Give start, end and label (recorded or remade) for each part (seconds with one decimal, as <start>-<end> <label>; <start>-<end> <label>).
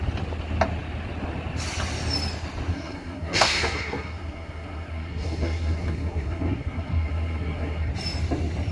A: 0.0-2.7 recorded; 2.7-7.9 remade; 7.9-8.7 recorded